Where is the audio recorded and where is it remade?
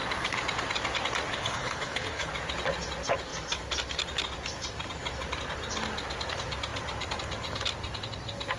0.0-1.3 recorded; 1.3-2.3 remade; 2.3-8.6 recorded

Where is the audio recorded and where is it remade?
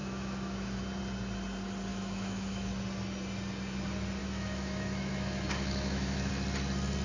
0.0-0.8 remade; 0.8-1.9 recorded; 1.9-2.7 remade; 2.7-4.2 recorded; 4.2-6.3 remade; 6.3-7.0 recorded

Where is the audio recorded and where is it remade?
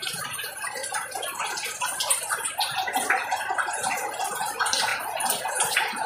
0.0-0.8 remade; 0.8-3.7 recorded; 3.7-4.9 remade; 4.9-5.5 recorded; 5.5-6.1 remade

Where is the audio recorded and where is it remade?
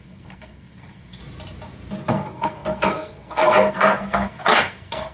0.0-1.2 remade; 1.2-2.1 recorded; 2.1-5.1 remade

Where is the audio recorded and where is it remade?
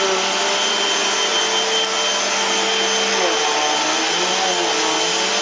0.0-5.4 recorded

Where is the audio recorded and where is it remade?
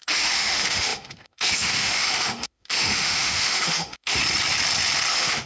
0.0-4.2 remade; 4.2-5.1 recorded; 5.1-5.5 remade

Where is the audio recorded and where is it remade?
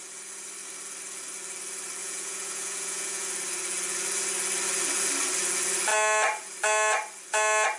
0.0-2.0 recorded; 2.0-3.3 remade; 3.3-7.8 recorded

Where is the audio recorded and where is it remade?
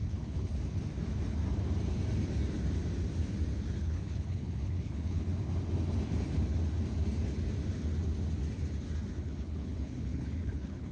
0.0-0.5 remade; 0.5-3.8 recorded; 3.8-5.3 remade; 5.3-9.1 recorded; 9.1-10.9 remade